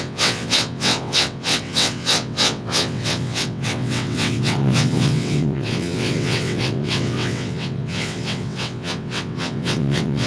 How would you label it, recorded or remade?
remade